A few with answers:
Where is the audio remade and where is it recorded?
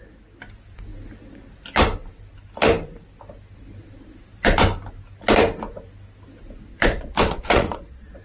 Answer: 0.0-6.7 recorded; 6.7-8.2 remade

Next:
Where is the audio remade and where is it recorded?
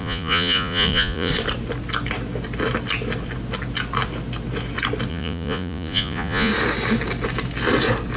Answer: 0.0-1.3 remade; 1.3-5.1 recorded; 5.1-6.5 remade; 6.5-8.2 recorded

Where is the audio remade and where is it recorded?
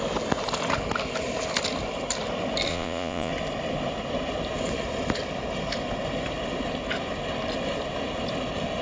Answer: 0.0-2.7 recorded; 2.7-3.3 remade; 3.3-8.8 recorded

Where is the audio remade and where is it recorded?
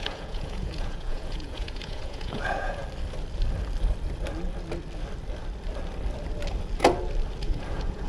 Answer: 0.0-2.8 remade; 2.8-7.4 recorded; 7.4-8.1 remade